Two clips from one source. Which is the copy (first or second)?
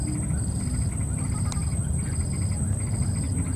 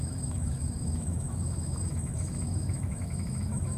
second